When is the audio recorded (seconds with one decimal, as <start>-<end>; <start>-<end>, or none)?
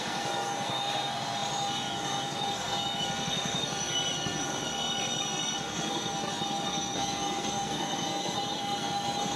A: none